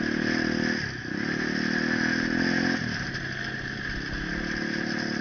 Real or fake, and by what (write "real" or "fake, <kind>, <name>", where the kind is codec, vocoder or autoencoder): real